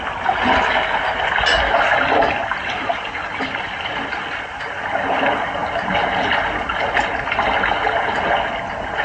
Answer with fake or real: real